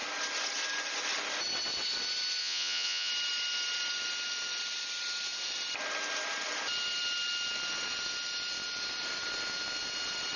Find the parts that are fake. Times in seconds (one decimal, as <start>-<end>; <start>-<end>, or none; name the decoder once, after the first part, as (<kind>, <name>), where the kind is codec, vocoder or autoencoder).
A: 2.4-3.1 (vocoder, Vocos)